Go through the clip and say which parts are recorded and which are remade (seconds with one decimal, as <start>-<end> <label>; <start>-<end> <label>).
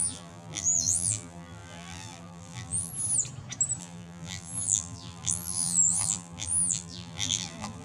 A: 0.0-2.9 remade; 2.9-3.8 recorded; 3.8-7.8 remade